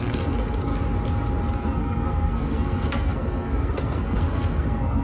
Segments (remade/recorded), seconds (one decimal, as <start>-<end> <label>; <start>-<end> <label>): 0.0-0.7 remade; 0.7-1.5 recorded; 1.5-5.0 remade